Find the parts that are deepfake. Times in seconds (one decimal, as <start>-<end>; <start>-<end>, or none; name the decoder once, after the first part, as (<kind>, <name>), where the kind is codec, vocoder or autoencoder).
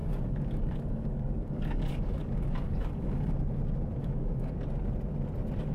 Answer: 0.0-3.4 (codec, DAC); 4.0-4.6